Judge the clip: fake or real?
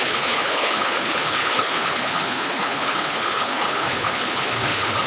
fake